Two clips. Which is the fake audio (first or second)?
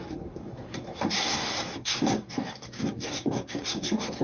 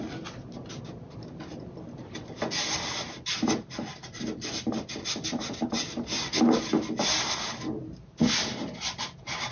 first